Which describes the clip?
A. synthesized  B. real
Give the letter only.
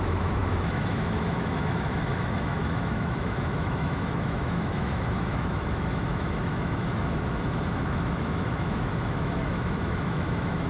A